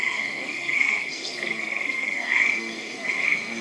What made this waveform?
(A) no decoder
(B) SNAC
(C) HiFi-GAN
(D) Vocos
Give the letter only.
B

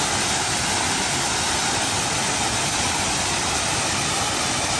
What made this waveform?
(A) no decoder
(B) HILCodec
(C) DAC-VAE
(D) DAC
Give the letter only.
A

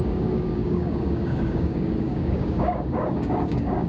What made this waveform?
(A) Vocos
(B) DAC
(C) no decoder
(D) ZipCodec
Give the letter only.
B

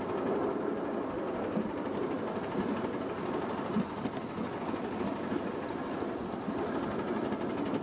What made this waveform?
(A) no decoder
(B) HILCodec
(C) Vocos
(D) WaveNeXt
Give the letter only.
A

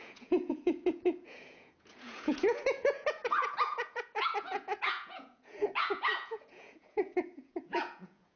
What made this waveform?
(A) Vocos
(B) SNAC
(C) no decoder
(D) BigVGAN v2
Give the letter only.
A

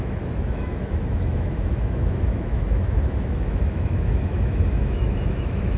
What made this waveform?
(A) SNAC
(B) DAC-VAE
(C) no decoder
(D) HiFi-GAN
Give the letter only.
B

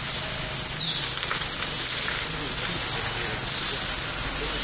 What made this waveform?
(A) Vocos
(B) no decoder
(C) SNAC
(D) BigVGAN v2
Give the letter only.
B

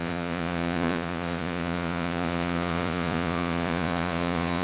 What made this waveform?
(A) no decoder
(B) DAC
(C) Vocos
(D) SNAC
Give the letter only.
C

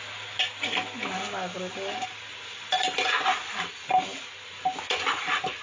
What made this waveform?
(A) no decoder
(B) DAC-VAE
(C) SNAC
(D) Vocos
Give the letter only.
A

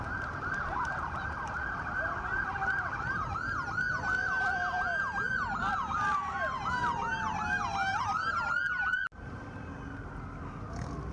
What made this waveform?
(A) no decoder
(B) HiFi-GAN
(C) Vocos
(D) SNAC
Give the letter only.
A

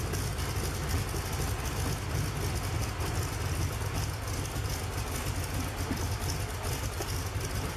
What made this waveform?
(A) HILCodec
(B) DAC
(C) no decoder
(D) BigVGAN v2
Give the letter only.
C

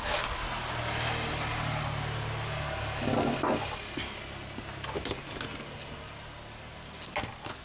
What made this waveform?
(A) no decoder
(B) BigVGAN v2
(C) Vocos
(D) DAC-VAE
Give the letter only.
A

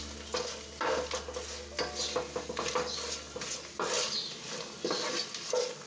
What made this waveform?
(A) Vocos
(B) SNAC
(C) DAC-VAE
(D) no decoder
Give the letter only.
D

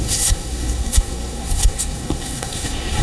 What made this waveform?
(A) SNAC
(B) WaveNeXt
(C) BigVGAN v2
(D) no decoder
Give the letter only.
A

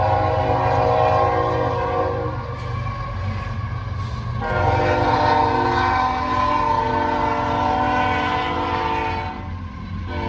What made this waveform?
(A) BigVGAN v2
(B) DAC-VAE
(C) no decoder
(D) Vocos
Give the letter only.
C